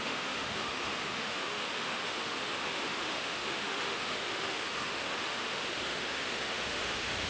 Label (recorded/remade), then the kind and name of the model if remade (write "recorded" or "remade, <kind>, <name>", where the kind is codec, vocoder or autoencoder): remade, autoencoder, DAC-VAE